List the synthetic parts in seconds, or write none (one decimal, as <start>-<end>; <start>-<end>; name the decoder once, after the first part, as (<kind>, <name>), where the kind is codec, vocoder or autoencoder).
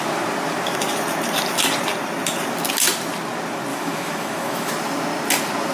3.7-4.7 (autoencoder, DAC-VAE)